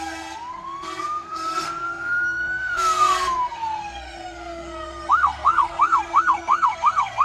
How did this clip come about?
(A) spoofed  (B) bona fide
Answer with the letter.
A